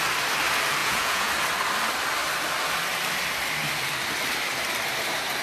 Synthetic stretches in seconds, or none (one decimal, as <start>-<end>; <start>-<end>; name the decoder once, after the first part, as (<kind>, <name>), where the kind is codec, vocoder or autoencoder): 0.8-1.3 (vocoder, Vocos)